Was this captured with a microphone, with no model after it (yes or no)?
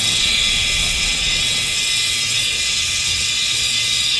no